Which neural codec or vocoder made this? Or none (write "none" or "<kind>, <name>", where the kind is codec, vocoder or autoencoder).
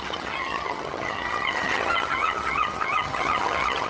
vocoder, HiFi-GAN